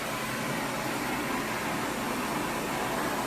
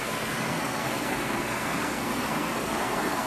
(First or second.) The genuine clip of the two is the first